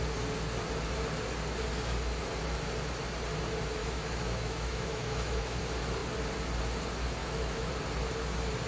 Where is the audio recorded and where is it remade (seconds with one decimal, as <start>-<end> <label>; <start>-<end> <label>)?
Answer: 0.0-3.8 recorded; 3.8-5.6 remade; 5.6-7.2 recorded; 7.2-7.7 remade; 7.7-8.7 recorded